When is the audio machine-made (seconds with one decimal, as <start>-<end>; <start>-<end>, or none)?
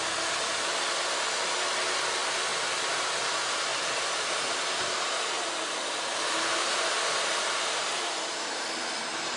2.5-3.2; 3.7-4.5